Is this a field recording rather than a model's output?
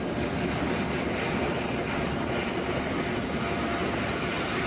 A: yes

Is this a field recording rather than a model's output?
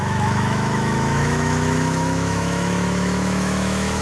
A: no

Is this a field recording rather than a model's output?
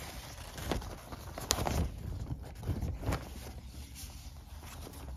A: yes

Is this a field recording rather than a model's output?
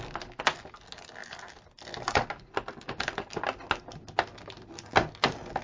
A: yes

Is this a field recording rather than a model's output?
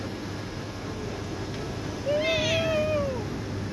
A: yes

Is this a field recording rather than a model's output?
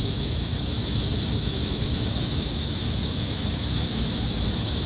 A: no